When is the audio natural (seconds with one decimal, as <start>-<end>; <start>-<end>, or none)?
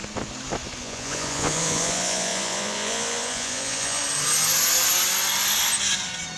0.0-0.8; 4.0-6.4